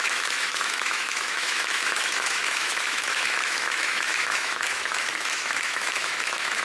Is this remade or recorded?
remade